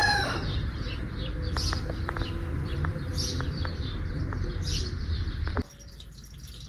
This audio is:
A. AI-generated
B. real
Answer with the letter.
A